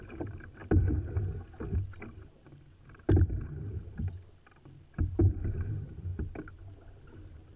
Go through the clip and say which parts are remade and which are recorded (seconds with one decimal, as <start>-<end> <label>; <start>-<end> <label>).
0.0-0.6 remade; 0.6-5.2 recorded; 5.2-6.1 remade; 6.1-7.6 recorded